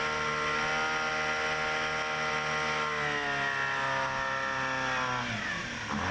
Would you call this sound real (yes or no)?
yes